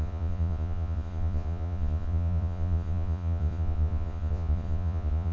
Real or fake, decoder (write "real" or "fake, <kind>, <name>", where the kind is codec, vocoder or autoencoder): fake, vocoder, Vocos